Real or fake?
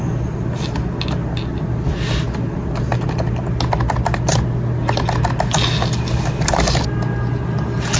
real